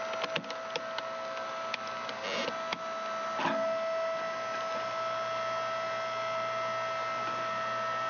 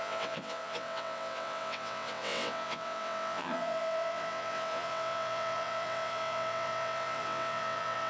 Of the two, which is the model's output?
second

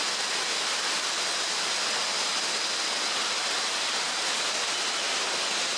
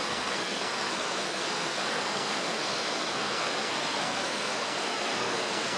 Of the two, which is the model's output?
second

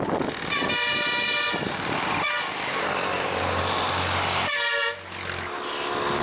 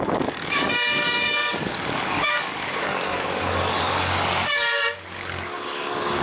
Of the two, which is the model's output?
second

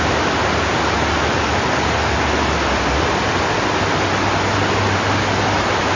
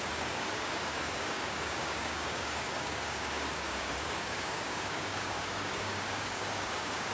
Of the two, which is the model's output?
second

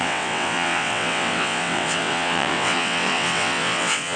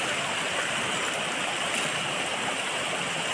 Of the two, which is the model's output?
first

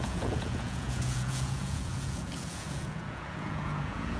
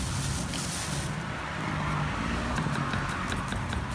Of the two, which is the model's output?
first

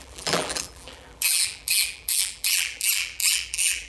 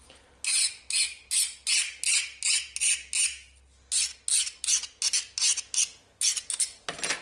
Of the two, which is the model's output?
first